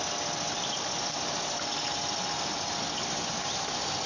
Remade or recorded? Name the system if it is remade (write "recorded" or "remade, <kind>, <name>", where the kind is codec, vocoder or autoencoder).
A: recorded